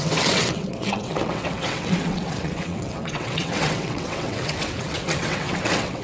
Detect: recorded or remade remade